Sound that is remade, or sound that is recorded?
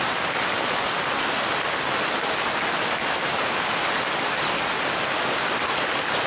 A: recorded